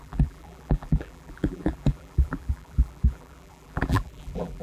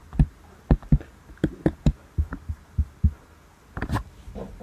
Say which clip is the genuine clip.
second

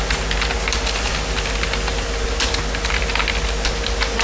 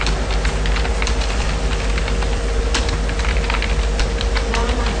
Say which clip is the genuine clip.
first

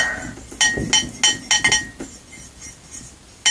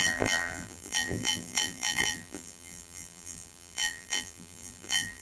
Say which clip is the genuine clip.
first